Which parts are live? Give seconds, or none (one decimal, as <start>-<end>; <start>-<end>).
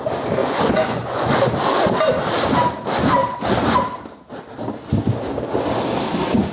0.0-0.4; 1.3-6.5